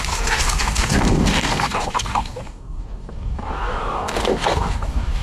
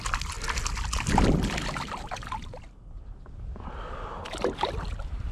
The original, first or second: second